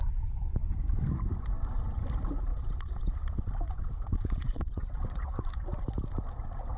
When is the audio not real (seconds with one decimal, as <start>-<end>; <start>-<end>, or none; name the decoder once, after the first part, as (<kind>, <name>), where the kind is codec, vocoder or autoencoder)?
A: 2.5-5.4 (vocoder, WaveNeXt)